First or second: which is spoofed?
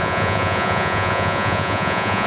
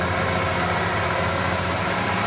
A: first